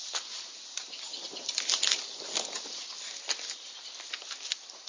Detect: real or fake real